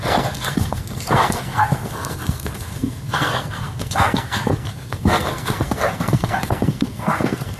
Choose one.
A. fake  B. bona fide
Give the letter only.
A